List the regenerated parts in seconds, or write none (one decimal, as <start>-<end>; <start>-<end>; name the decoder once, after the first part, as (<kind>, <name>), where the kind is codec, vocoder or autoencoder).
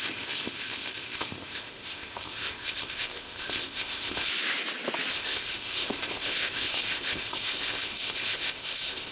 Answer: 0.0-4.3 (codec, ZipCodec); 5.1-9.1